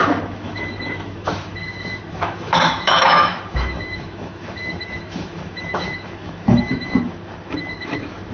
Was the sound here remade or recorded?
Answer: remade